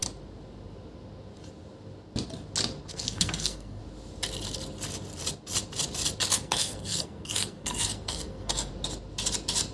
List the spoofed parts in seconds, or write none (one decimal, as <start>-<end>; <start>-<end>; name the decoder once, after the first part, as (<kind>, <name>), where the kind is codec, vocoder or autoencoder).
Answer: 2.9-3.8 (codec, SNAC); 6.3-8.7